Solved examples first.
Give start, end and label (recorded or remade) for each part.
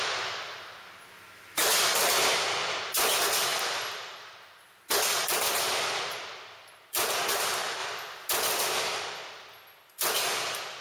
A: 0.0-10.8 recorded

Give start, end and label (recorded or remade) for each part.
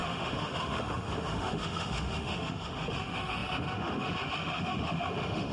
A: 0.0-5.5 remade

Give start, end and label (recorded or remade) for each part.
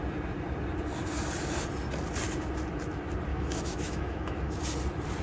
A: 0.0-3.3 recorded; 3.3-4.6 remade; 4.6-5.2 recorded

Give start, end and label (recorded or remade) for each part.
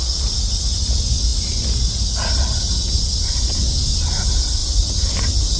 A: 0.0-5.6 recorded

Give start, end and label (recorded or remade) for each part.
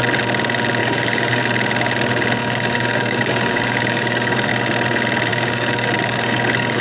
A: 0.0-0.8 recorded; 0.8-1.4 remade; 1.4-2.4 recorded; 2.4-4.5 remade; 4.5-5.3 recorded; 5.3-6.8 remade